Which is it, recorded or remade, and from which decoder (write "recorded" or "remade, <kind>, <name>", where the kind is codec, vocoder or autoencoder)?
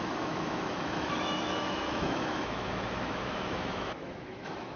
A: remade, autoencoder, DAC-VAE